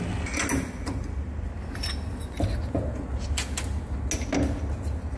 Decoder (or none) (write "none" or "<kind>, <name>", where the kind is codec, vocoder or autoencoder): none